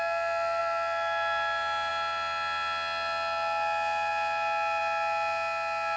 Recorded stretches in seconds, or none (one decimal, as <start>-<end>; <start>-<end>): 0.0-6.0